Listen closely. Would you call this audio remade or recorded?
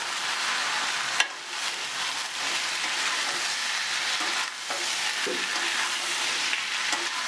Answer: recorded